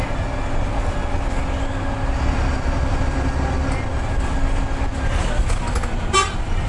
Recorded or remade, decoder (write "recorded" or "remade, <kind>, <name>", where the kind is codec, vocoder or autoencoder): recorded